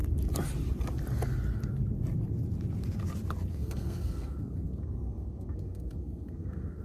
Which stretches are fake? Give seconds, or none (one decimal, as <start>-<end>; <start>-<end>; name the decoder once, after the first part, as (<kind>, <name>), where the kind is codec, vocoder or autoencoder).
3.5-6.8 (codec, SNAC)